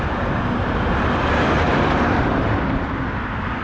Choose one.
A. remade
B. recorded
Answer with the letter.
B